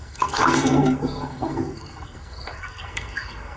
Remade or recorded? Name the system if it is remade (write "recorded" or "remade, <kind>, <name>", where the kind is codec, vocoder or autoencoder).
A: remade, codec, SNAC